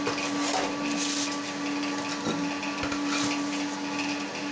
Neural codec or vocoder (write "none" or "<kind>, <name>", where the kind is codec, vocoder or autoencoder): none